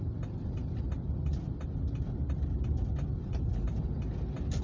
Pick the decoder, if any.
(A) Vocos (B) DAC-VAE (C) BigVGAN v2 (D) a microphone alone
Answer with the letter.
D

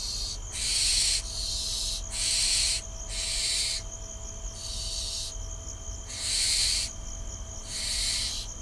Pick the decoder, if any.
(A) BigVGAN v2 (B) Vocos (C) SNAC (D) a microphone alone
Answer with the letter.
D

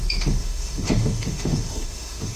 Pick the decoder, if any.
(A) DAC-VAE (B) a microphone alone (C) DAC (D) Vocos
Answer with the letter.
A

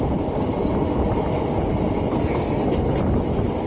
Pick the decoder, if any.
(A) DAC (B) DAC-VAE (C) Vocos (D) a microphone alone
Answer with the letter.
D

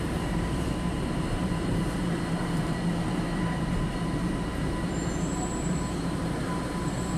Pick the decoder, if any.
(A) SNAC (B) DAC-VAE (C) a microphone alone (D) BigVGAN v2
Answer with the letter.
D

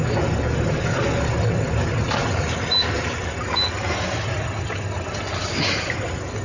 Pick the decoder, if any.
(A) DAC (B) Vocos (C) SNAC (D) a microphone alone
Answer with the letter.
D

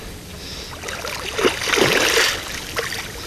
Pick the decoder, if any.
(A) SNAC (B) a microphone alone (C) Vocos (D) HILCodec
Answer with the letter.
B